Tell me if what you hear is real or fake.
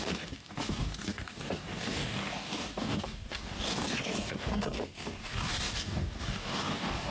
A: fake